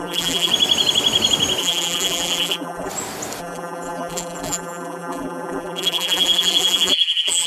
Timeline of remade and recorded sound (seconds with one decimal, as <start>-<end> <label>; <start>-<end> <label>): 0.0-0.5 remade; 0.5-1.6 recorded; 1.6-2.9 remade; 2.9-3.4 recorded; 3.4-7.5 remade